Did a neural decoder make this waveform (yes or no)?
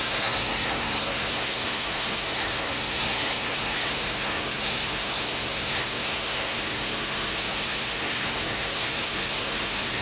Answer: yes